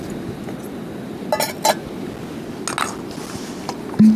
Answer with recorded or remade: recorded